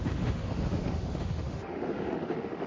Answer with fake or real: fake